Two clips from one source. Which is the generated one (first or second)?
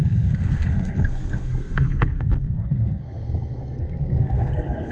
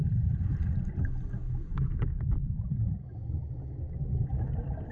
first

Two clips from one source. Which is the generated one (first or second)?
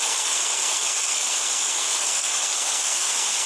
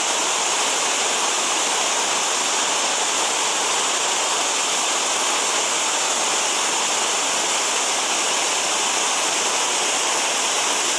first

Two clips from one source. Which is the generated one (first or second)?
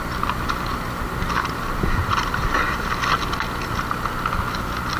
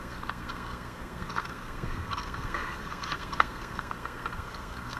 second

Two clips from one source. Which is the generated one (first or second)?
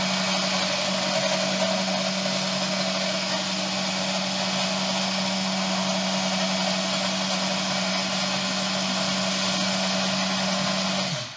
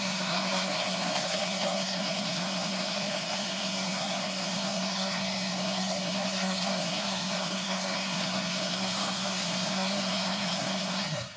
second